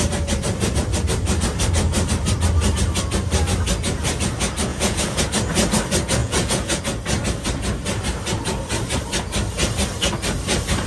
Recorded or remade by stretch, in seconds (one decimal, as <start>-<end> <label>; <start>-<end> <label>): 0.0-4.7 recorded; 4.7-5.2 remade; 5.2-6.2 recorded; 6.2-6.8 remade; 6.8-10.9 recorded